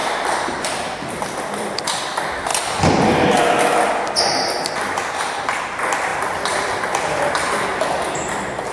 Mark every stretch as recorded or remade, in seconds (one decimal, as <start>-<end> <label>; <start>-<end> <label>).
0.0-2.5 remade; 2.5-5.6 recorded; 5.6-8.7 remade